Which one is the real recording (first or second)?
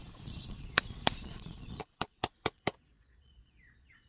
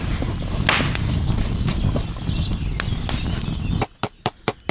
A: second